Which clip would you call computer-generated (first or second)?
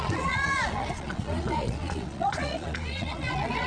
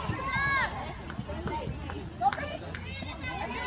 first